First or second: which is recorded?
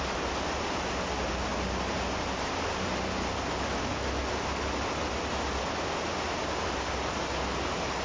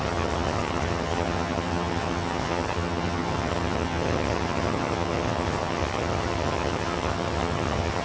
first